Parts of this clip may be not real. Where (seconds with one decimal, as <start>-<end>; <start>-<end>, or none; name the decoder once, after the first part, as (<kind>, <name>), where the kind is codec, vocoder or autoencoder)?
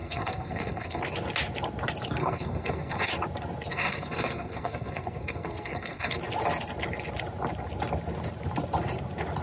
0.0-1.0 (codec, SNAC); 2.2-3.1; 3.7-6.2